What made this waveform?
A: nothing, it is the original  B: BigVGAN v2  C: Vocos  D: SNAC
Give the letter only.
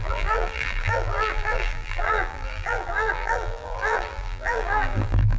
B